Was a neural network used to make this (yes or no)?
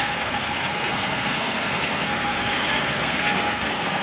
yes